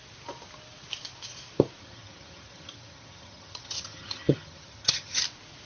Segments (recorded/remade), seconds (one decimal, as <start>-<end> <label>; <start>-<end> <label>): 0.0-1.8 recorded; 1.8-5.2 remade; 5.2-5.7 recorded